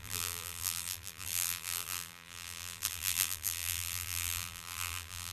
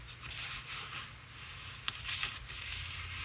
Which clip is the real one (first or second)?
second